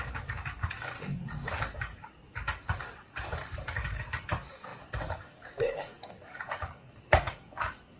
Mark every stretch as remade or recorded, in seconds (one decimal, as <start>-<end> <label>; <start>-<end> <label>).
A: 0.0-8.0 remade